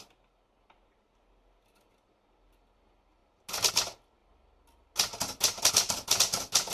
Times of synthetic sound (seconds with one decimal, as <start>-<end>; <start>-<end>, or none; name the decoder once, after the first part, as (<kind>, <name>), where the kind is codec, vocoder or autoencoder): none

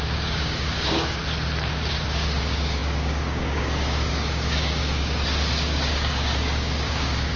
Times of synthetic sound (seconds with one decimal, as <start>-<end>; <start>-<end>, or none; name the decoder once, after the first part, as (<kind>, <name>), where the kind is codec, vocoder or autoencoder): 0.0-1.2 (codec, DAC); 1.9-7.4

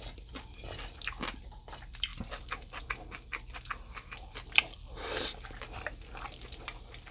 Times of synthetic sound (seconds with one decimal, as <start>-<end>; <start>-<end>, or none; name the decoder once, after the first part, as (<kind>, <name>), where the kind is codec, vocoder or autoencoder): none

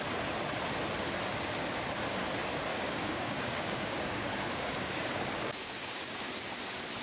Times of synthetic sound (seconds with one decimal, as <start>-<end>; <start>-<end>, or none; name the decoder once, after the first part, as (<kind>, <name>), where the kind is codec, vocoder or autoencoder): 2.7-6.3 (codec, DAC)

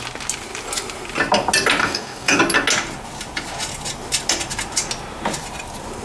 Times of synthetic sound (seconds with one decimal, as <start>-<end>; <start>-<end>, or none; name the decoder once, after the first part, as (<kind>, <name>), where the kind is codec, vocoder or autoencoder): 1.8-2.4 (codec, DAC)